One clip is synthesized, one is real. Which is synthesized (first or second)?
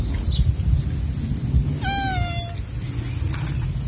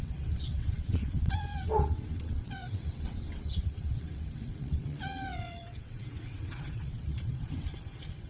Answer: second